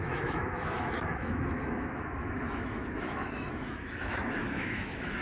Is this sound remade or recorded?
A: remade